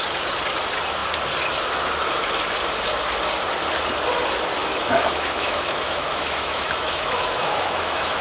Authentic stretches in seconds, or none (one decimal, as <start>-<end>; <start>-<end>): 0.0-4.6